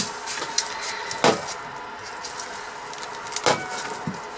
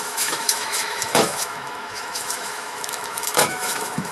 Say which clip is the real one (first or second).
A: first